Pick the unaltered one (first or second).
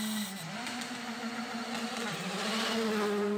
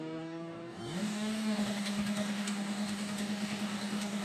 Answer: first